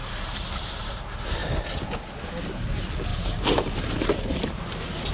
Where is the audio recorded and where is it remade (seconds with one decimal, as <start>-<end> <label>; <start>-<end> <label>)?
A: 0.0-0.9 remade; 0.9-3.1 recorded; 3.1-5.1 remade

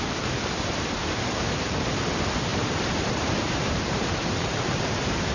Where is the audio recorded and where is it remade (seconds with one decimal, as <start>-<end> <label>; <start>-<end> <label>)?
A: 0.0-1.0 recorded; 1.0-1.9 remade; 1.9-2.5 recorded; 2.5-4.7 remade; 4.7-5.3 recorded